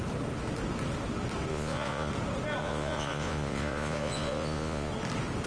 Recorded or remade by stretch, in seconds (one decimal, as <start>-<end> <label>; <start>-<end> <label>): 0.0-1.5 recorded; 1.5-2.1 remade; 2.1-2.6 recorded; 2.6-4.9 remade; 4.9-5.5 recorded

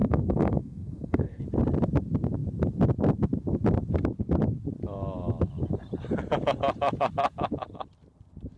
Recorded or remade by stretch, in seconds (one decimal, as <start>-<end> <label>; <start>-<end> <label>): 0.0-1.4 remade; 1.4-8.6 recorded